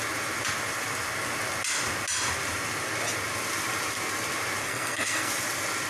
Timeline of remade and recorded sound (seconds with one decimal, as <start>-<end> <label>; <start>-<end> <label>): 0.0-4.6 recorded; 4.6-5.3 remade; 5.3-5.9 recorded